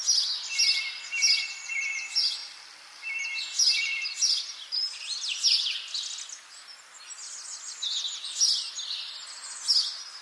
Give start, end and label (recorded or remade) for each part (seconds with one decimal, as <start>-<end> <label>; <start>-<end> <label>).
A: 0.0-10.2 recorded